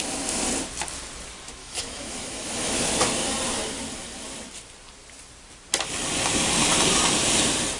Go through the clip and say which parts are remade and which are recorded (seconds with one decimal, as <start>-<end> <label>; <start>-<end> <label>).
0.0-1.6 recorded; 1.6-2.8 remade; 2.8-7.8 recorded